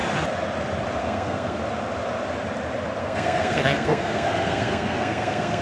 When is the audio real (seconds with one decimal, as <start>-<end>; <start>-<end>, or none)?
0.0-1.0; 1.6-3.0